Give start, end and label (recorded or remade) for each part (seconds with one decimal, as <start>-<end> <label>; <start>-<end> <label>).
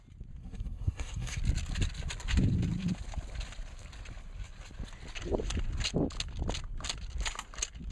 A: 0.0-0.4 recorded; 0.4-1.4 remade; 1.4-7.9 recorded